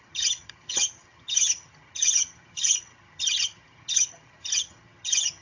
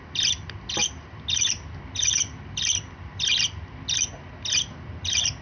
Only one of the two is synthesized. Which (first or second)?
first